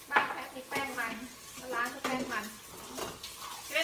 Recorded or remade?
recorded